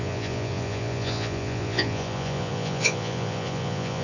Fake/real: fake